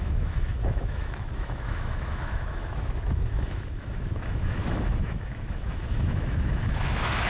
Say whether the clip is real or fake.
fake